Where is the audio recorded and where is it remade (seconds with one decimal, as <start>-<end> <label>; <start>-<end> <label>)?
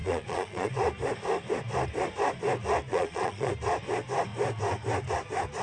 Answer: 0.0-0.7 remade; 0.7-2.9 recorded; 2.9-3.5 remade; 3.5-5.6 recorded